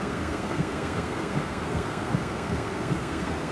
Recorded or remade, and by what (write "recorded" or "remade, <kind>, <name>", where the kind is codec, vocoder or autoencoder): remade, codec, SNAC